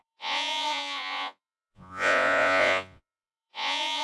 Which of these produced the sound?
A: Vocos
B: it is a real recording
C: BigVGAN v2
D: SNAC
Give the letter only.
A